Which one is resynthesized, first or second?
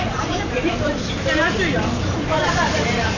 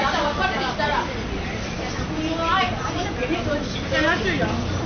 first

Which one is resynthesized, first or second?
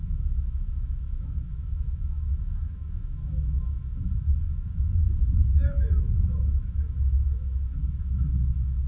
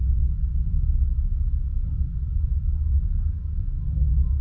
first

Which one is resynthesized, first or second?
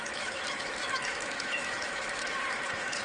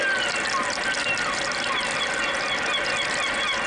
first